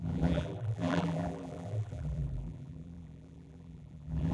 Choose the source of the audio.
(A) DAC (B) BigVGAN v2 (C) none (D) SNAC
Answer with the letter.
B